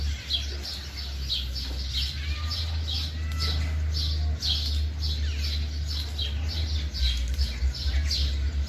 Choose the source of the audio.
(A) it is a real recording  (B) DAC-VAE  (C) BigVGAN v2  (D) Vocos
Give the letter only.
A